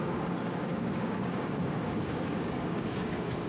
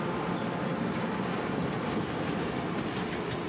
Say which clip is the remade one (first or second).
first